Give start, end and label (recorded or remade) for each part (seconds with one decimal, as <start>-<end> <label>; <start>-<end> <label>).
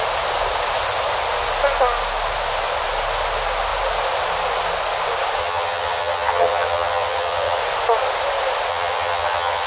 0.0-5.4 recorded; 5.4-7.6 remade; 7.6-8.7 recorded; 8.7-9.7 remade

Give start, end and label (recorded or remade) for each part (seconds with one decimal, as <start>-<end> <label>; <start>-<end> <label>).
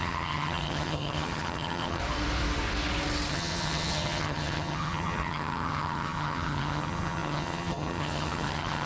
0.0-2.0 remade; 2.0-3.3 recorded; 3.3-8.9 remade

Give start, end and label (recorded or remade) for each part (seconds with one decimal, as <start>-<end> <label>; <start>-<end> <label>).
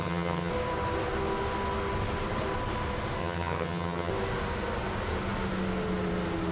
0.0-0.5 remade; 0.5-3.2 recorded; 3.2-4.1 remade; 4.1-6.5 recorded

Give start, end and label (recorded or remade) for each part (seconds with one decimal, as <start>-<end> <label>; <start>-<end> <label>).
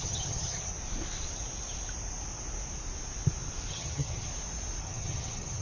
0.0-0.7 remade; 0.7-3.7 recorded; 3.7-4.3 remade; 4.3-4.8 recorded; 4.8-5.6 remade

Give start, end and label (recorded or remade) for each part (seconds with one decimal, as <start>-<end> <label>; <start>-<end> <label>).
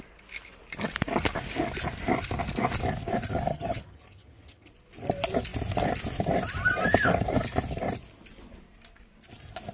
0.0-3.5 recorded; 3.5-4.7 remade; 4.7-9.7 recorded